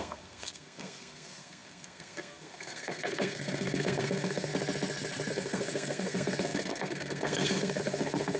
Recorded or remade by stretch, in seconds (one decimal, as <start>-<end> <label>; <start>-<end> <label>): 0.0-4.5 remade; 4.5-5.3 recorded; 5.3-8.4 remade